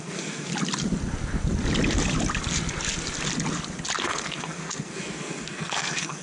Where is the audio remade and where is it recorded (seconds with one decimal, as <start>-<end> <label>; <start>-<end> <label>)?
0.0-0.5 remade; 0.5-4.0 recorded; 4.0-6.2 remade

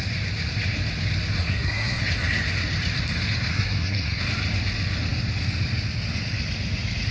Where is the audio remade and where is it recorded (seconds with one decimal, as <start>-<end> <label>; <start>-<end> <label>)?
0.0-1.4 recorded; 1.4-2.0 remade; 2.0-3.5 recorded; 3.5-4.2 remade; 4.2-7.1 recorded

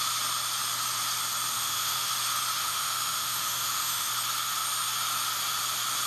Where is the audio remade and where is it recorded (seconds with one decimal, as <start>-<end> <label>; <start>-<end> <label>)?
0.0-1.5 recorded; 1.5-2.1 remade; 2.1-2.6 recorded; 2.6-4.1 remade; 4.1-6.1 recorded

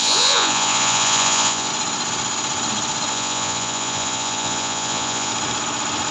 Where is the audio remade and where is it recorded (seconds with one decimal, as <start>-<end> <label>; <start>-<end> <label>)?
0.0-1.7 remade; 1.7-3.1 recorded; 3.1-5.3 remade; 5.3-6.1 recorded